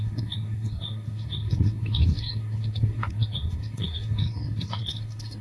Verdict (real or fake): fake